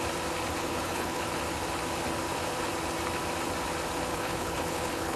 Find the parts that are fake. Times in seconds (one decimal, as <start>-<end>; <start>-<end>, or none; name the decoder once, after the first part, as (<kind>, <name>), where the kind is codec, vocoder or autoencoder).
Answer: 0.6-1.2 (codec, HILCodec); 4.1-5.2